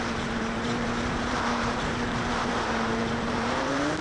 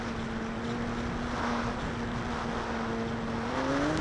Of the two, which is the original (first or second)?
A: second